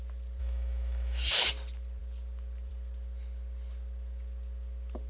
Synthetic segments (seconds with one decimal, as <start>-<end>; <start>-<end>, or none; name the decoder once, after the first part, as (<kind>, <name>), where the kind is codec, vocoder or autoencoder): 0.4-1.3 (autoencoder, DAC-VAE)